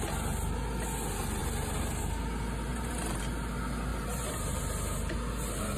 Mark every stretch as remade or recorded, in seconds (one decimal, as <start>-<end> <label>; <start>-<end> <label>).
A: 0.0-1.4 recorded; 1.4-2.0 remade; 2.0-2.7 recorded; 2.7-3.2 remade; 3.2-3.9 recorded; 3.9-4.6 remade; 4.6-5.8 recorded